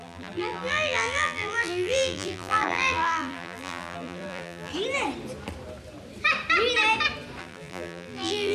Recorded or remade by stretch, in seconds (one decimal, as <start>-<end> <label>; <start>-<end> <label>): 0.0-4.7 remade; 4.7-7.4 recorded; 7.4-8.5 remade